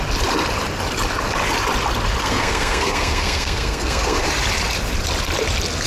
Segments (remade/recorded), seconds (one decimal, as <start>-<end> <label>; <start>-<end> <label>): 0.0-2.2 recorded; 2.2-4.3 remade; 4.3-5.9 recorded

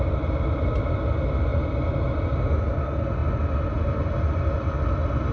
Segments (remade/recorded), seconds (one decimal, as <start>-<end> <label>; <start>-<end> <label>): 0.0-5.3 recorded

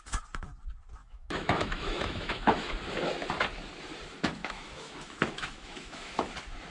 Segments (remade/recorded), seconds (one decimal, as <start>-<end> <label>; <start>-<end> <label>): 0.0-1.0 recorded; 1.0-2.7 remade; 2.7-4.4 recorded; 4.4-6.3 remade; 6.3-6.7 recorded

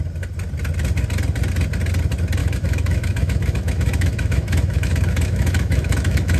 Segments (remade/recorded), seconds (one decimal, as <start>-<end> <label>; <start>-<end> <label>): 0.0-2.4 recorded; 2.4-6.4 remade

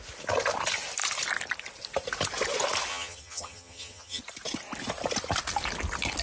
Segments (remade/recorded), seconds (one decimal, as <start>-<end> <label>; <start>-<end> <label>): 0.0-2.9 recorded; 2.9-4.2 remade; 4.2-6.2 recorded

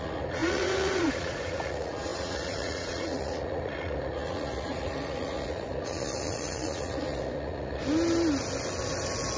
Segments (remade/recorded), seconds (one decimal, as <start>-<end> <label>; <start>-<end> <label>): 0.0-7.8 remade; 7.8-9.4 recorded

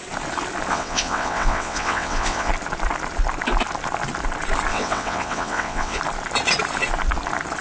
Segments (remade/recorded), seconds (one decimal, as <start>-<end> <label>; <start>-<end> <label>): 0.0-0.7 recorded; 0.7-2.5 remade; 2.5-4.7 recorded; 4.7-6.0 remade; 6.0-7.6 recorded